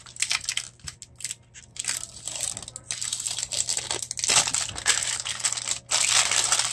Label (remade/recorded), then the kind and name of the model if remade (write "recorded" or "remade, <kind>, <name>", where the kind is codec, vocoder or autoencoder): recorded